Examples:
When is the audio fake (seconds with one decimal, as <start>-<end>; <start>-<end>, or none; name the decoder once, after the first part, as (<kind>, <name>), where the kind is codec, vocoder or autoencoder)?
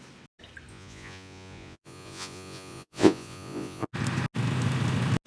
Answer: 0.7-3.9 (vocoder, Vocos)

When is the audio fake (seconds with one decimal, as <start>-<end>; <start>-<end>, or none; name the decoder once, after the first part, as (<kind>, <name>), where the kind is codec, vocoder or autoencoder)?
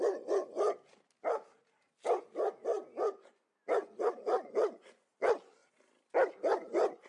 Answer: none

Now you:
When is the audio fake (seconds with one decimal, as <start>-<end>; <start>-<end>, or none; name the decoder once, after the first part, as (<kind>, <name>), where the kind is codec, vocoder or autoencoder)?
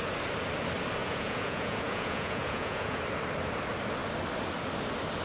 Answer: 1.0-3.0 (vocoder, Vocos)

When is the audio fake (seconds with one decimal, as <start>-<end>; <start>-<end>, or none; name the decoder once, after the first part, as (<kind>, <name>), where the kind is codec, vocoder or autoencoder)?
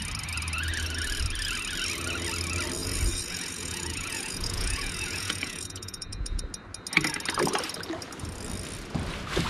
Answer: 2.8-6.4 (vocoder, Vocos)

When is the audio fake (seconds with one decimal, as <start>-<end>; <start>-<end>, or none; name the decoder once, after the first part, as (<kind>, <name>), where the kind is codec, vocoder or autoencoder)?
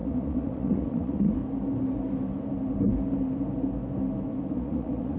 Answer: 0.0-1.4 (vocoder, Vocos); 4.5-5.2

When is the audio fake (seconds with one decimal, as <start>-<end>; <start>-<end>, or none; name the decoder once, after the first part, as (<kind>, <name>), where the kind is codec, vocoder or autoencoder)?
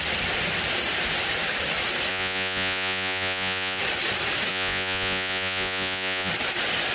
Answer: 2.1-3.8 (vocoder, Vocos); 4.5-6.3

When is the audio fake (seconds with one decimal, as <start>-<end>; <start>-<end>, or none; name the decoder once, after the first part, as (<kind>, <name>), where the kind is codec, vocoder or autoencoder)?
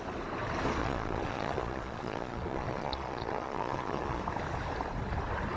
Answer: 0.8-4.2 (vocoder, Vocos)